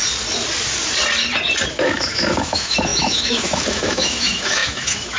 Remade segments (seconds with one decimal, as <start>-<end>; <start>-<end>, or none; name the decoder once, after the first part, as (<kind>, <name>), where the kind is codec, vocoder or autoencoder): 1.7-5.2 (autoencoder, DAC-VAE)